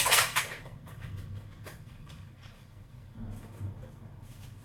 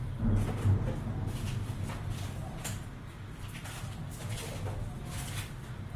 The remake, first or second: first